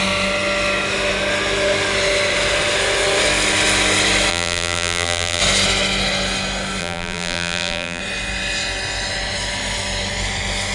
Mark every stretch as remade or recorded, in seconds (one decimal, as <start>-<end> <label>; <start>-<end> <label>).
0.0-4.3 recorded; 4.3-5.4 remade; 5.4-6.8 recorded; 6.8-8.0 remade; 8.0-10.7 recorded